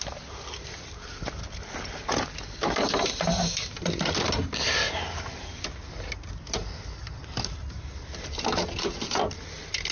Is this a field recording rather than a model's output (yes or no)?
yes